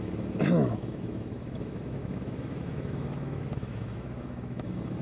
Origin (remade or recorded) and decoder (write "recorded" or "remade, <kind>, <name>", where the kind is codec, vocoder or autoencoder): remade, autoencoder, DAC-VAE